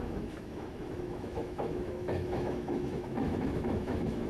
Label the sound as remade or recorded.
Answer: remade